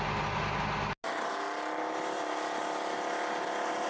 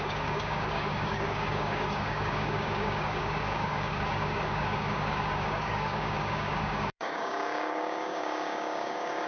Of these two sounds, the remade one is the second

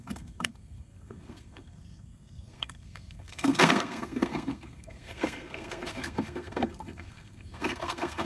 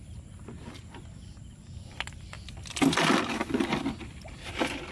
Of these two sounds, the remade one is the first